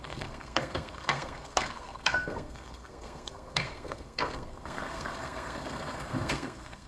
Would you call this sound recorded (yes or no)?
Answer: no